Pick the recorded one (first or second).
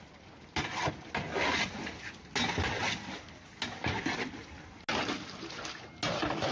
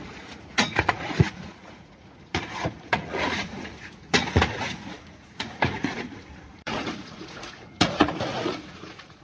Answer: first